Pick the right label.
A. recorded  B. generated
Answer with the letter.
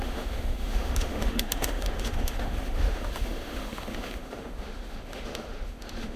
B